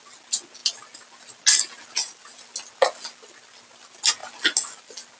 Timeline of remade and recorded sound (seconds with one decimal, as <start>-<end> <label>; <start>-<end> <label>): 0.0-5.2 recorded